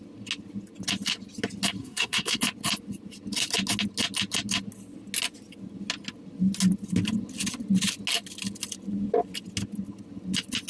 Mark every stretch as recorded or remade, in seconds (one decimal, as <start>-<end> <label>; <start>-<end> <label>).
0.0-1.8 recorded; 1.8-2.4 remade; 2.4-10.7 recorded